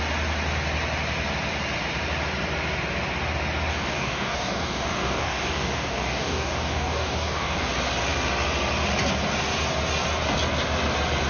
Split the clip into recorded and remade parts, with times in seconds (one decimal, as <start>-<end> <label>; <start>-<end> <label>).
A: 0.0-3.7 recorded; 3.7-7.7 remade; 7.7-11.3 recorded